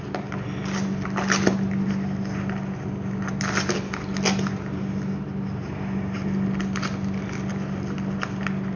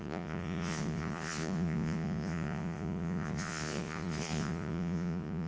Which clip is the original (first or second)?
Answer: first